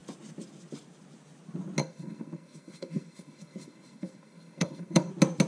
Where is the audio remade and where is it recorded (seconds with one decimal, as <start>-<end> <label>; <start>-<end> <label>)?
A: 0.0-1.8 recorded; 1.8-5.1 remade; 5.1-5.5 recorded